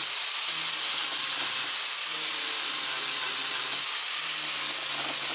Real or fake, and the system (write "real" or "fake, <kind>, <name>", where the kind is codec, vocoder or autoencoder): real